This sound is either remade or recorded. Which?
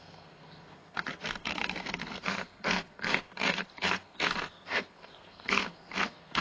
remade